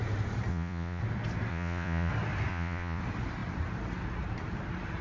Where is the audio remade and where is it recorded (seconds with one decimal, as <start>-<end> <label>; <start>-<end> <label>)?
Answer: 0.0-0.5 recorded; 0.5-1.0 remade; 1.0-1.5 recorded; 1.5-2.1 remade; 2.1-2.5 recorded; 2.5-3.0 remade; 3.0-5.0 recorded